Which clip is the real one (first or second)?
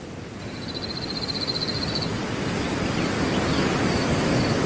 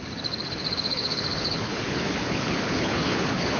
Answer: first